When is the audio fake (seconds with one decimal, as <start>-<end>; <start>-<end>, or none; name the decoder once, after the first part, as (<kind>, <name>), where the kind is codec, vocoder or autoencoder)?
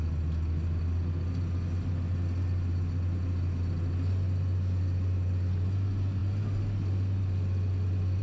none